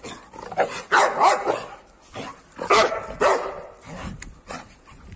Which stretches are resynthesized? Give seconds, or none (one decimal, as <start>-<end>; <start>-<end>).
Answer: none